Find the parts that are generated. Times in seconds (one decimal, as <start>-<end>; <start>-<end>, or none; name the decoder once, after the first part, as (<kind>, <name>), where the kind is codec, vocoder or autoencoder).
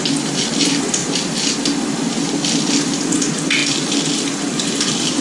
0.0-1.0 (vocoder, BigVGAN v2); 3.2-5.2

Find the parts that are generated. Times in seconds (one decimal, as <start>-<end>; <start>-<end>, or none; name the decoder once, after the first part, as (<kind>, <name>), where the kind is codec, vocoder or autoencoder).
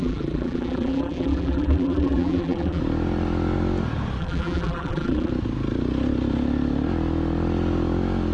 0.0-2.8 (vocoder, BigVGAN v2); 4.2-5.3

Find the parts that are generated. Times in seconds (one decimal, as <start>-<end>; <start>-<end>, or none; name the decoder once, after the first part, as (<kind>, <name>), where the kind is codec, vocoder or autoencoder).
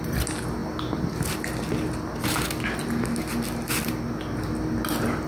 none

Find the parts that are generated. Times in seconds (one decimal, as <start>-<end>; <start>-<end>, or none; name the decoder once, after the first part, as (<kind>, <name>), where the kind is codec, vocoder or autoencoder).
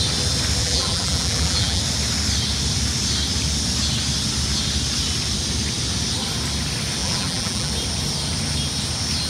0.6-1.8 (vocoder, BigVGAN v2); 7.0-7.7